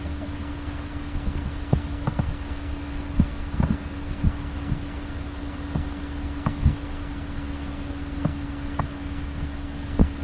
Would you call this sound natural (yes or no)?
no